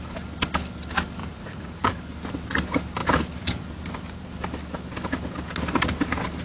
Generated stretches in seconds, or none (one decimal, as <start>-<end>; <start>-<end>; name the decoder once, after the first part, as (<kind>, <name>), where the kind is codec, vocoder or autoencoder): 1.2-1.9 (vocoder, Vocos)